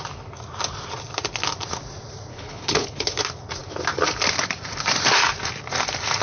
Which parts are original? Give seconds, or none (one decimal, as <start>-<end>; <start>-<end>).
0.0-2.3; 3.2-6.2